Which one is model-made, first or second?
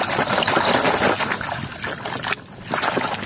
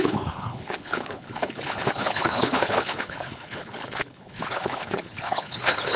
second